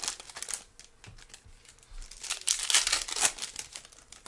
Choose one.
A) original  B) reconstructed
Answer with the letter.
A